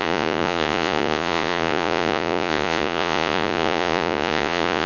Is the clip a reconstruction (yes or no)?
yes